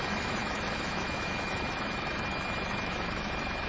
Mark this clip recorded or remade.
remade